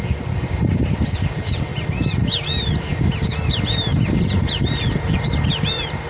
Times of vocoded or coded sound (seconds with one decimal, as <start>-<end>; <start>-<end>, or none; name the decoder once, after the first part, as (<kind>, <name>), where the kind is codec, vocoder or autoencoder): 1.7-3.1 (vocoder, BigVGAN v2)